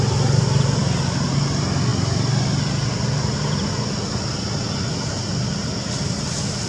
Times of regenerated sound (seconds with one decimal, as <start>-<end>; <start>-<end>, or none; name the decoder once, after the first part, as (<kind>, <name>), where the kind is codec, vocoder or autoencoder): none